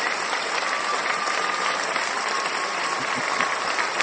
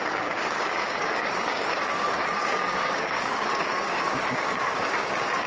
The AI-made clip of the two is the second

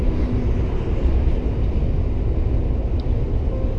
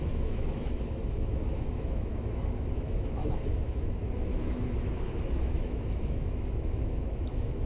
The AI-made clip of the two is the second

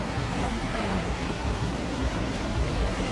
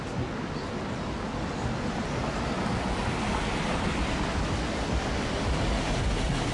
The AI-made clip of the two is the first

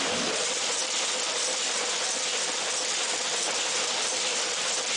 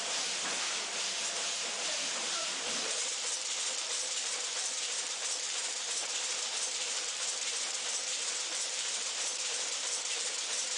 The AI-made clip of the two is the second